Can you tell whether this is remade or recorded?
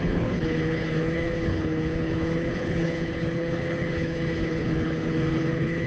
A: remade